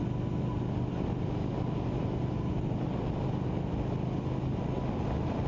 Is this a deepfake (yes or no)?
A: no